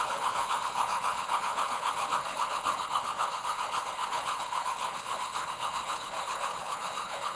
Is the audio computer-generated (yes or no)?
yes